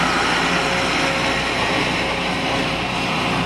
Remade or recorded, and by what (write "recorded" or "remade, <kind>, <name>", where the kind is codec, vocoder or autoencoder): recorded